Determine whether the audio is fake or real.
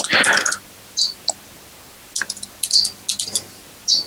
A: real